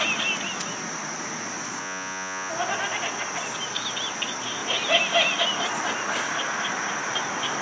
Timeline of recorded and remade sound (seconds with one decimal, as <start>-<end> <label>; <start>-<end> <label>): 0.0-1.8 recorded; 1.8-2.5 remade; 2.5-7.6 recorded